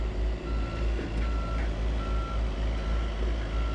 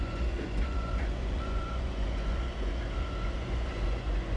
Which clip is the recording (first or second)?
first